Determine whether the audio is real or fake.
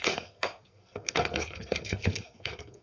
fake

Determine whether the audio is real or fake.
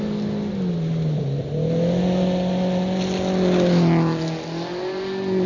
real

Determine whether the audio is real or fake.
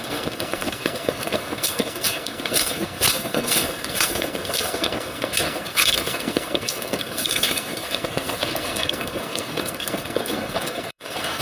fake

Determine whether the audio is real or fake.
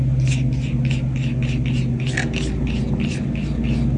real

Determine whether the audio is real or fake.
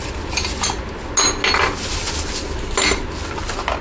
real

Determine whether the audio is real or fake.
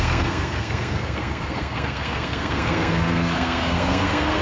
fake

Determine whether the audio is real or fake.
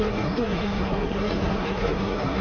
fake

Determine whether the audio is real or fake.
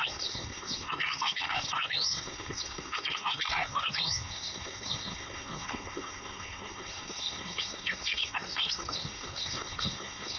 fake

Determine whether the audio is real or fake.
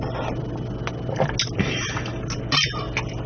real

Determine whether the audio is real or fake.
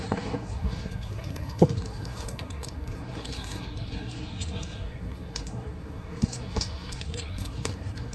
fake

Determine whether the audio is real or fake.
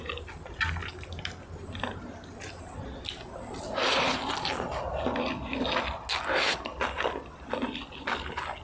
real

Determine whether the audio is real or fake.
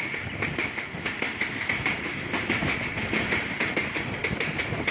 real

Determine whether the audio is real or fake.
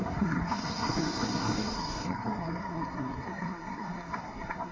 fake